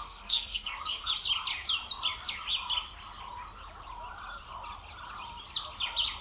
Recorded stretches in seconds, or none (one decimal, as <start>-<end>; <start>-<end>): 1.1-6.2